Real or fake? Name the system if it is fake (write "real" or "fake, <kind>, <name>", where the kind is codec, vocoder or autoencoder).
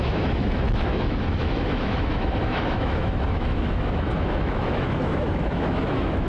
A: fake, autoencoder, DAC-VAE